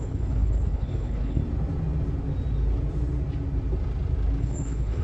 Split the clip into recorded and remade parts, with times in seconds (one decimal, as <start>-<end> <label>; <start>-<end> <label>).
0.0-1.4 remade; 1.4-4.4 recorded; 4.4-5.0 remade